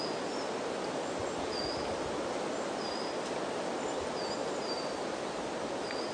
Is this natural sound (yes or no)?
yes